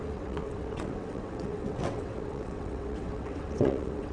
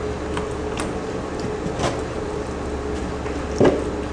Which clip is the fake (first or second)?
first